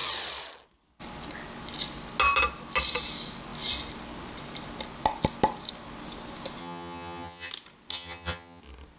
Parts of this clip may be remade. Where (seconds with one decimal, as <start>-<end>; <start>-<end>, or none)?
6.6-7.5; 7.9-8.6